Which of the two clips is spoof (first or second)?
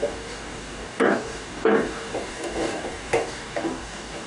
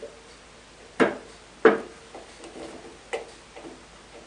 first